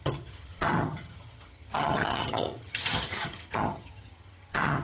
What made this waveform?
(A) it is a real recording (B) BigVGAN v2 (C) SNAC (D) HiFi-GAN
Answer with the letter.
D